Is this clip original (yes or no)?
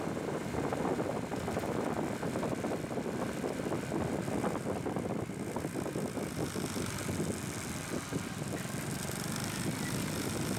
yes